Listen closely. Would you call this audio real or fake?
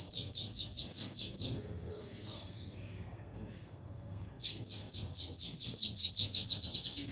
fake